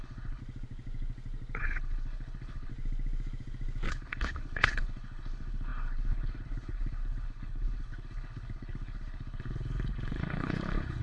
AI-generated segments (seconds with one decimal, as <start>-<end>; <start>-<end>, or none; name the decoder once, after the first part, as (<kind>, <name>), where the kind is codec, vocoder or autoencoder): 0.0-0.4 (codec, HILCodec); 1.6-2.7; 3.9-11.0